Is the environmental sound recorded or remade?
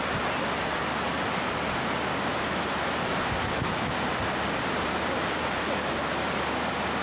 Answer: recorded